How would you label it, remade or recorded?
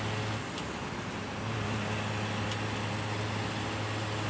recorded